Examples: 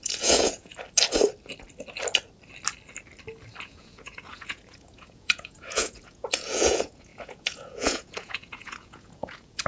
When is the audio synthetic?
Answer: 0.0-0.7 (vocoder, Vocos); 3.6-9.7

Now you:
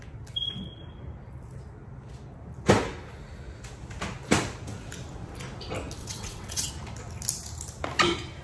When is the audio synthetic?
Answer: 6.0-6.7 (vocoder, WaveNeXt)

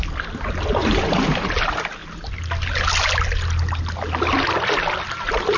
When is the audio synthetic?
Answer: 0.8-1.4 (vocoder, BigVGAN v2)

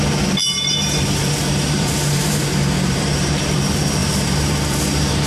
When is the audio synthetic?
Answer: 0.4-3.6 (vocoder, BigVGAN v2); 4.0-5.3

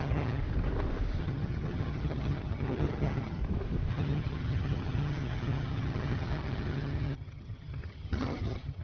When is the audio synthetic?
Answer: 0.0-0.4 (vocoder, HiFi-GAN); 1.2-3.4; 3.9-8.8

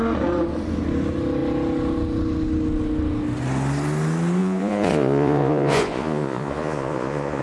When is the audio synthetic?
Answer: 4.4-7.4 (vocoder, Vocos)

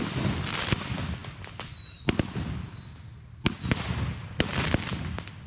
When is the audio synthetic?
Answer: none

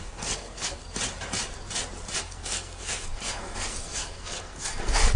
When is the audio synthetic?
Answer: 0.0-0.8 (codec, SNAC); 2.2-5.2